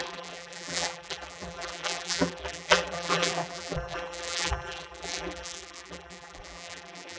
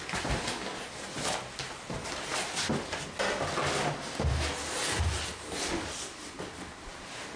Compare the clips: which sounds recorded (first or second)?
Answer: second